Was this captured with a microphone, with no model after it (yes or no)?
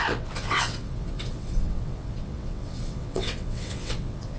no